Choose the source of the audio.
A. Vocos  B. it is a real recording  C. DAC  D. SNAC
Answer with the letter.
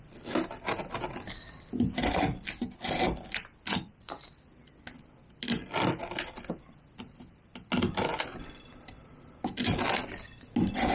B